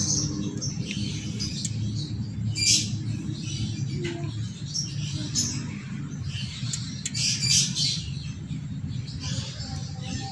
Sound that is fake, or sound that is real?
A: real